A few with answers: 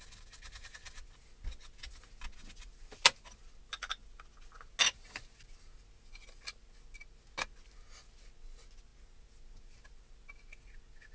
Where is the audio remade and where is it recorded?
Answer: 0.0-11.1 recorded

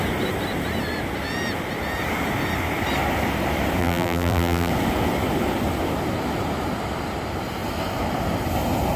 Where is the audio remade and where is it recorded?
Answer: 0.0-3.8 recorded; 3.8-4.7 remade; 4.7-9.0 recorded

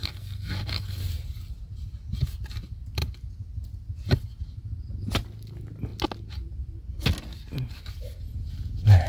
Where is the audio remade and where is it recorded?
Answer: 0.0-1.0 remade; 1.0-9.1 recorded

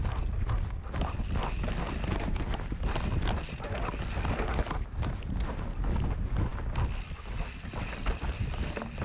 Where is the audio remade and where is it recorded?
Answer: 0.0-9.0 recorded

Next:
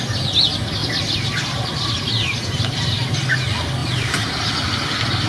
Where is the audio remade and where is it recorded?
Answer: 0.0-0.8 recorded; 0.8-3.1 remade; 3.1-3.8 recorded; 3.8-4.5 remade; 4.5-5.3 recorded